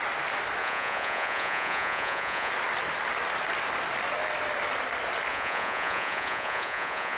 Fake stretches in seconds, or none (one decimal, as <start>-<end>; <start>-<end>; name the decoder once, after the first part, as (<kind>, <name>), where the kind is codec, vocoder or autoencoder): 0.6-2.5 (vocoder, Vocos); 5.3-7.2